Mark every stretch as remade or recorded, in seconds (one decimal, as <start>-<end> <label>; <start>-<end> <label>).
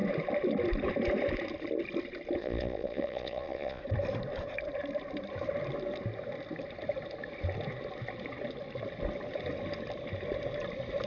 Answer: 0.0-2.4 recorded; 2.4-3.8 remade; 3.8-11.1 recorded